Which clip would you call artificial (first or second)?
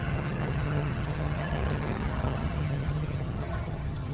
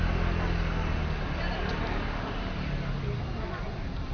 first